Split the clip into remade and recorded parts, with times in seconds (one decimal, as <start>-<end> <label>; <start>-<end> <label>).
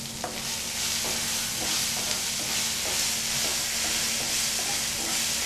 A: 0.0-5.5 recorded